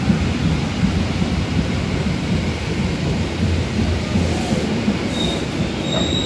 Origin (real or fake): real